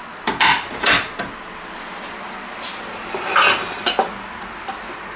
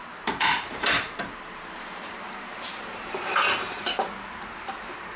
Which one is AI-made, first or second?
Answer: second